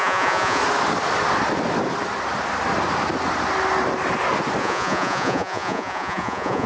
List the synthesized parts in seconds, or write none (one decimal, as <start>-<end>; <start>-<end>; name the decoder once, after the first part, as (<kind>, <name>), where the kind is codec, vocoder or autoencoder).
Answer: 0.0-0.6 (vocoder, Vocos); 4.6-6.7